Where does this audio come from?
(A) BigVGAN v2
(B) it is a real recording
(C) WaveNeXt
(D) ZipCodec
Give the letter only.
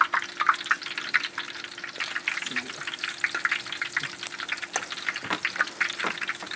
B